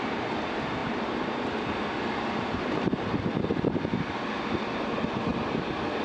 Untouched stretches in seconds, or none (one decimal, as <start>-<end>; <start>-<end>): 0.0-6.0